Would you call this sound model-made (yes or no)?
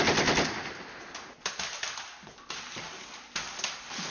no